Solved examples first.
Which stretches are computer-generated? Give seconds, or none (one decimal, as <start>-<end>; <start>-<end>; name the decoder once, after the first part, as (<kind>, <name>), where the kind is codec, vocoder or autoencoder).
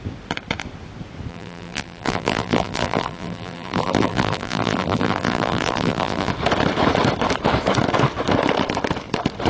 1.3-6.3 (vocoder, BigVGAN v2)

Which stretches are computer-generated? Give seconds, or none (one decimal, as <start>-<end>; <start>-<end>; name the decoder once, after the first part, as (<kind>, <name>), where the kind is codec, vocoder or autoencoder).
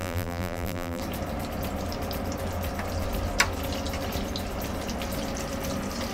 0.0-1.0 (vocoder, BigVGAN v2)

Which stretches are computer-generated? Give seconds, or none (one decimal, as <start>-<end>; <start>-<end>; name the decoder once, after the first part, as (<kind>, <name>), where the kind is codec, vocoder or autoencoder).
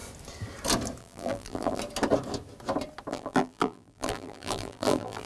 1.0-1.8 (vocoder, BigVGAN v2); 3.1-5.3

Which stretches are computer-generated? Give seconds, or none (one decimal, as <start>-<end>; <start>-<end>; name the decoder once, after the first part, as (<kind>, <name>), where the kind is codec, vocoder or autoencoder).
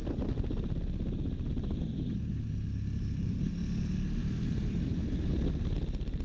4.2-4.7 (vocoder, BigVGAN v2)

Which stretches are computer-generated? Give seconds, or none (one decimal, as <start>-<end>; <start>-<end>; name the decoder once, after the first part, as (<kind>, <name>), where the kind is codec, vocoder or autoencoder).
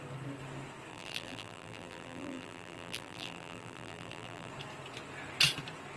0.9-4.5 (vocoder, BigVGAN v2)